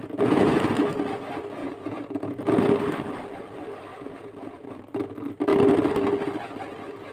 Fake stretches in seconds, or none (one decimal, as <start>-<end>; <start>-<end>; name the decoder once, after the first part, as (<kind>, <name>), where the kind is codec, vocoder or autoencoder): 0.0-0.7 (vocoder, Vocos); 1.6-2.6; 3.9-4.8